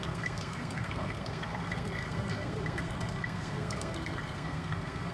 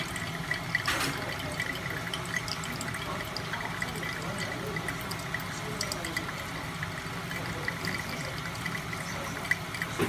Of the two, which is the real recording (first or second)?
second